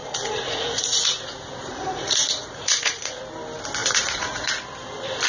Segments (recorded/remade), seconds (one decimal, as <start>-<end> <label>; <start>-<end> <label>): 0.0-3.2 remade; 3.2-3.8 recorded; 3.8-4.5 remade; 4.5-5.3 recorded